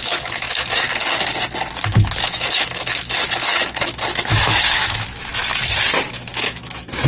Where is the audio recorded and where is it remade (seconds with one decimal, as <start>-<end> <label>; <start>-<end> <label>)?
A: 0.0-0.9 remade; 0.9-1.7 recorded; 1.7-5.3 remade; 5.3-6.1 recorded; 6.1-7.1 remade